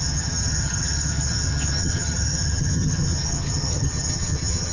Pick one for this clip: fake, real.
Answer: fake